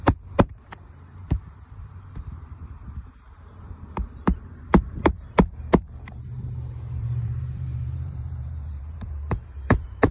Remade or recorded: remade